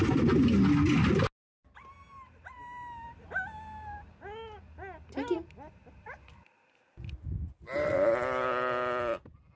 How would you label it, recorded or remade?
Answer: recorded